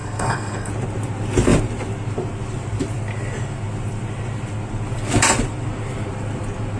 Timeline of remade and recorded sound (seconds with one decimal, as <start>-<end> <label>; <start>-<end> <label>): 0.0-0.7 remade; 0.7-6.8 recorded